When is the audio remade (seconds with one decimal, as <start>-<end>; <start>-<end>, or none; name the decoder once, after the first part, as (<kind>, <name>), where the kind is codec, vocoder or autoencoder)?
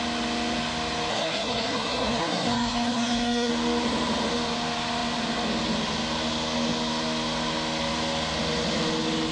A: 1.1-3.5 (codec, SNAC)